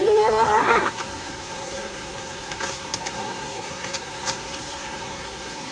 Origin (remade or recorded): remade